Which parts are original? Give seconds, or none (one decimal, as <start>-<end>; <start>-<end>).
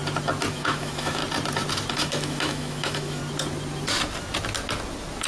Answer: 0.0-0.5; 1.2-1.9; 3.2-5.3